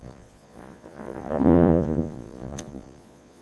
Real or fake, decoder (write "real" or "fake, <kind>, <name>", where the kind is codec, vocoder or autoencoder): fake, vocoder, Vocos